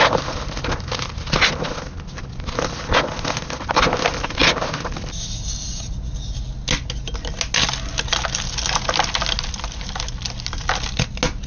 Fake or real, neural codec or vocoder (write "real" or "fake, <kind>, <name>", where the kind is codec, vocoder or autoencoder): real